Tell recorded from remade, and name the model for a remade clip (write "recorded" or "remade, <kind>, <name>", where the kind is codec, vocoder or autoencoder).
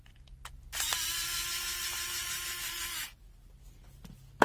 recorded